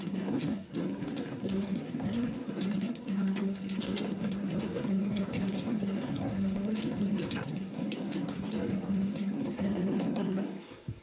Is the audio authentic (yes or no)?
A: no